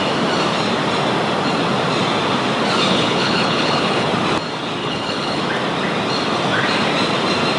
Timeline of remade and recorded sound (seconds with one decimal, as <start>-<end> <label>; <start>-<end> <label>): 0.0-2.9 recorded; 2.9-4.1 remade; 4.1-4.8 recorded; 4.8-5.4 remade; 5.4-7.6 recorded